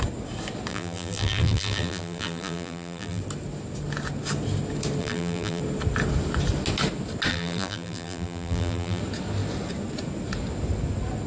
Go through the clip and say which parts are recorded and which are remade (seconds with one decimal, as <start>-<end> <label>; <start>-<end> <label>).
0.0-0.7 recorded; 0.7-3.2 remade; 3.2-5.0 recorded; 5.0-5.6 remade; 5.6-7.3 recorded; 7.3-9.0 remade; 9.0-11.3 recorded